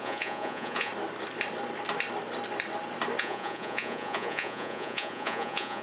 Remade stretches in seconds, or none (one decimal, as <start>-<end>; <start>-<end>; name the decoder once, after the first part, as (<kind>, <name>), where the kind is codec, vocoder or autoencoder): 0.0-0.9 (vocoder, Vocos); 3.2-5.8